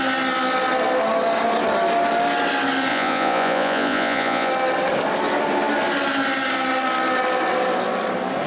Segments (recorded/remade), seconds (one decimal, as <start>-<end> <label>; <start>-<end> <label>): 0.0-2.9 recorded; 2.9-4.5 remade; 4.5-8.5 recorded